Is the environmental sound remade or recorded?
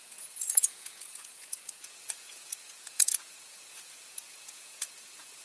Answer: remade